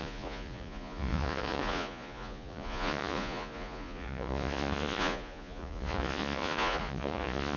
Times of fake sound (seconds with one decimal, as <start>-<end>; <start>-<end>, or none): 0.0-7.6